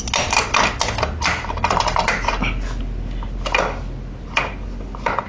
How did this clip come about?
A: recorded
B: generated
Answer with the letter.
A